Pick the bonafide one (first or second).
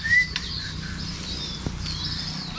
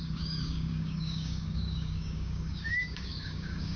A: first